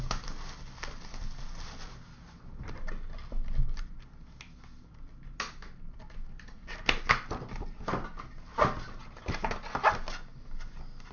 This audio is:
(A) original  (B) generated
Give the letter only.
A